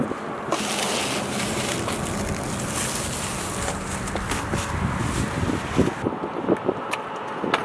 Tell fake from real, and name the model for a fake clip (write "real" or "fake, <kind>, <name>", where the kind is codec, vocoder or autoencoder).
real